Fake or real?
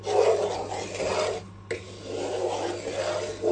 real